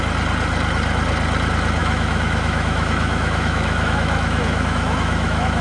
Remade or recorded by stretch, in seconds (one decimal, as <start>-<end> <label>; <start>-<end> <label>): 0.0-1.8 recorded; 1.8-5.6 remade